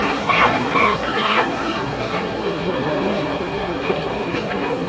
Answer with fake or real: fake